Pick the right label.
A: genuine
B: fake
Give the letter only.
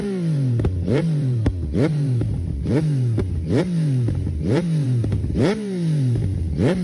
B